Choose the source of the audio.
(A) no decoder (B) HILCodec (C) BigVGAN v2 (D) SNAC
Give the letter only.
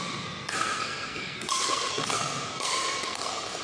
D